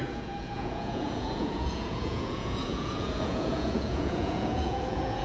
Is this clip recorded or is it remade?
remade